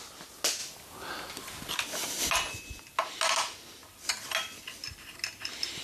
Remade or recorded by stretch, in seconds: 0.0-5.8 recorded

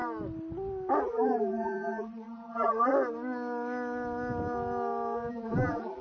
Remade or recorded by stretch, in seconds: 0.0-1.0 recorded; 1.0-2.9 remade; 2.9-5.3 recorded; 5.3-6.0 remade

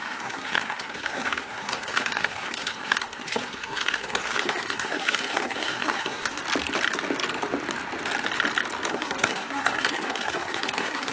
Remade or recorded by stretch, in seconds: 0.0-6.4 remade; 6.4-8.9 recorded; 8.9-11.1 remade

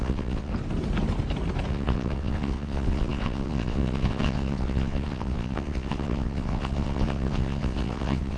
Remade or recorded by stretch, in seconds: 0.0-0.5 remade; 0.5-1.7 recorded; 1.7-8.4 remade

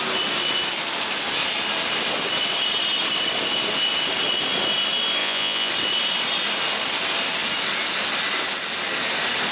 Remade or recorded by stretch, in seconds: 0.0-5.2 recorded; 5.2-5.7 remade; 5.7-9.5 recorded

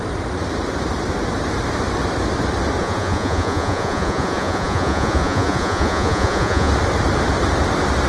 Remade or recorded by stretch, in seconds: 0.0-2.8 recorded; 2.8-6.7 remade; 6.7-8.1 recorded